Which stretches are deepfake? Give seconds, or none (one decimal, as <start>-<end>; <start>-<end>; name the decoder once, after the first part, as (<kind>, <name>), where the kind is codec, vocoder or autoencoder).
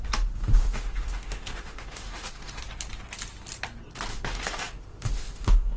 0.4-2.6 (autoencoder, DAC-VAE); 4.1-5.8